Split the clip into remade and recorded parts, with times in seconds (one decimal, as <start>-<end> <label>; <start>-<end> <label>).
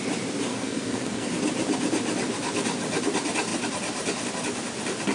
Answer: 0.0-0.5 recorded; 0.5-1.3 remade; 1.3-5.1 recorded